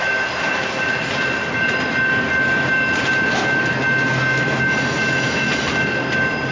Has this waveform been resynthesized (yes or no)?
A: no